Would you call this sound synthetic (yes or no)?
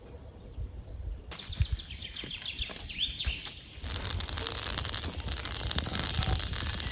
yes